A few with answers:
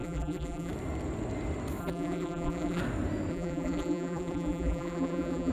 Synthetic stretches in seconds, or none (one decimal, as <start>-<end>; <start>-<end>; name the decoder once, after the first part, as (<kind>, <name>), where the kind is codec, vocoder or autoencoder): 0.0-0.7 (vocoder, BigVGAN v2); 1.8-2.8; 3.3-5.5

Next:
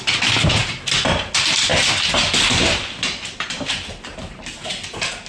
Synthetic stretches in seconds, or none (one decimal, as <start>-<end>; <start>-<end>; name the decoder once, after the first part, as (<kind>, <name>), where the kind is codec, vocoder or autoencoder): none

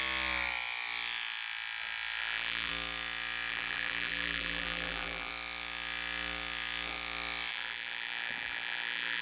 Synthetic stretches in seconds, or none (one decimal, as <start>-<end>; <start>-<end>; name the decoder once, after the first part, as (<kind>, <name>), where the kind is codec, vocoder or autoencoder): 2.2-2.7 (vocoder, BigVGAN v2); 3.5-5.3; 7.5-9.2

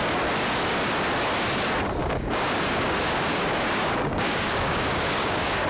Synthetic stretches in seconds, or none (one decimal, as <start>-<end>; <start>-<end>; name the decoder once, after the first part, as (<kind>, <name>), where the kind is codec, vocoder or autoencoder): 2.0-5.7 (codec, DAC)

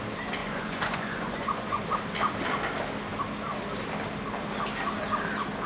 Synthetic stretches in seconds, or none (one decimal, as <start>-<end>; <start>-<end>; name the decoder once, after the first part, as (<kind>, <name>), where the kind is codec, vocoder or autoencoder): 0.4-1.8 (vocoder, Vocos)